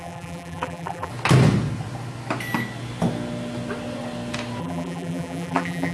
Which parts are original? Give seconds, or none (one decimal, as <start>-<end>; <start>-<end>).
1.1-4.6